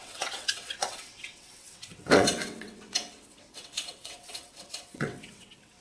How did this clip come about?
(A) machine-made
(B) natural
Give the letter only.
A